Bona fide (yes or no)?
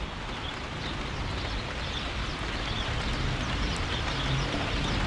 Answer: yes